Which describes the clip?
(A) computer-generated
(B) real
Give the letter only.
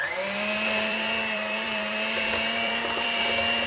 A